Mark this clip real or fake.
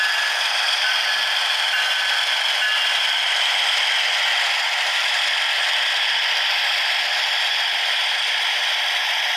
fake